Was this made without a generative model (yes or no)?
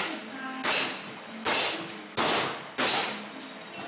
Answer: yes